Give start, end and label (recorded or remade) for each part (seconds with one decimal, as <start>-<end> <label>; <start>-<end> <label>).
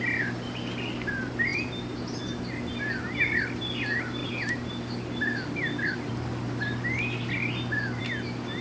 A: 0.0-8.6 recorded